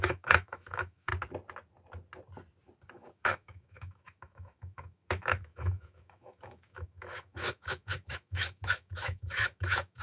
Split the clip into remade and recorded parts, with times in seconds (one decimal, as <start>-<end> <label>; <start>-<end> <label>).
0.0-1.1 remade; 1.1-2.9 recorded; 2.9-10.0 remade